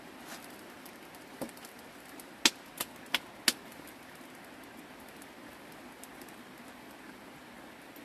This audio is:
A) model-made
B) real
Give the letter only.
B